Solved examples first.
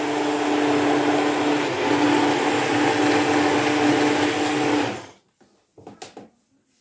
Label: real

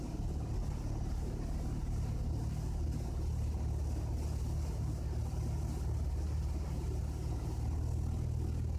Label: real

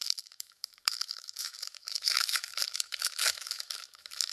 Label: fake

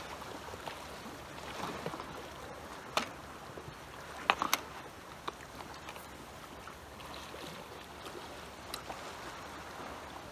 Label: real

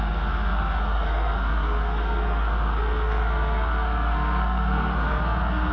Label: fake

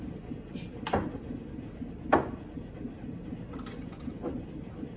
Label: real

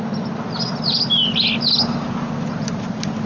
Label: real